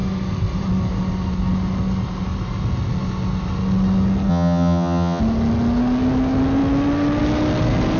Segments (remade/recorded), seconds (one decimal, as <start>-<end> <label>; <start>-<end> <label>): 0.0-4.3 recorded; 4.3-5.2 remade; 5.2-8.0 recorded